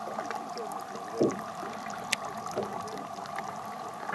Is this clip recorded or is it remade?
recorded